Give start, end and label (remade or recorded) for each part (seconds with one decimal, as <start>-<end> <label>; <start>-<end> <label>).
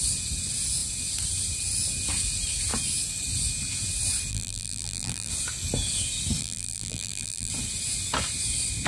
0.0-4.3 recorded; 4.3-5.3 remade; 5.3-6.4 recorded; 6.4-7.5 remade; 7.5-8.9 recorded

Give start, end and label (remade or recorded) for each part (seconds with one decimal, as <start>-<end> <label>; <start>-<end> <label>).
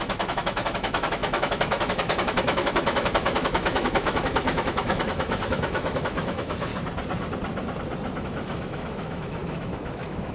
0.0-6.7 remade; 6.7-8.2 recorded; 8.2-10.3 remade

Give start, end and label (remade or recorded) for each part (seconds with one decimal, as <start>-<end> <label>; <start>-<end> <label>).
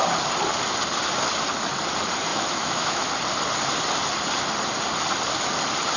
0.0-2.3 recorded; 2.3-3.1 remade; 3.1-6.0 recorded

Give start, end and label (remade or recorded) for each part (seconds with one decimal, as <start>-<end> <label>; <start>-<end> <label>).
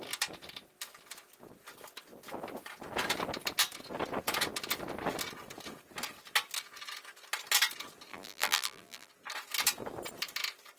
0.0-8.1 recorded; 8.1-9.1 remade; 9.1-10.8 recorded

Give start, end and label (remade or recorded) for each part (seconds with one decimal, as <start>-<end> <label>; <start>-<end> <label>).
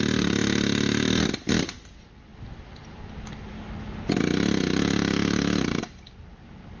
0.0-0.4 recorded; 0.4-1.1 remade; 1.1-6.8 recorded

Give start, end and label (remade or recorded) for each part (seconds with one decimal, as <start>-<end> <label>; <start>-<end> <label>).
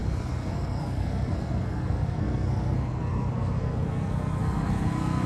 0.0-5.3 remade